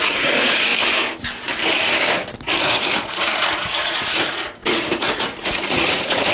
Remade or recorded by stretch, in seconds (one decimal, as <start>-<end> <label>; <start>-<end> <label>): 0.0-0.7 remade; 0.7-2.6 recorded; 2.6-6.3 remade